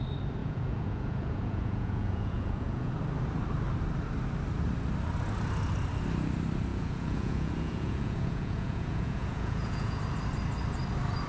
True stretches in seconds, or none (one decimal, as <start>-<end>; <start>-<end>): 0.0-0.4; 2.9-6.7; 10.0-11.3